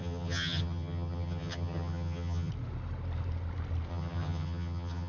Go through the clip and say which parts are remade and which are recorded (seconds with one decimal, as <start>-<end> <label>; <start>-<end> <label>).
0.0-2.5 remade; 2.5-3.9 recorded; 3.9-5.1 remade